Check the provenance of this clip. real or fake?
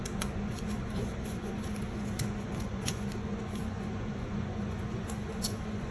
fake